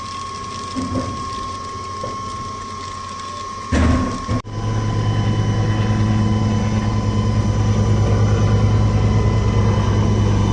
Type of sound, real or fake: real